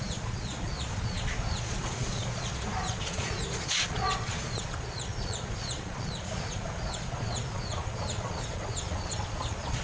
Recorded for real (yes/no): no